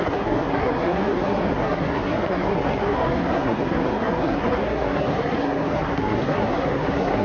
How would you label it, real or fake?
fake